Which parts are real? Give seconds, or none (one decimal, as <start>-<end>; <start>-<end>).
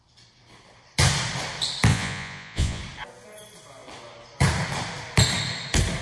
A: 0.0-1.9; 2.8-6.0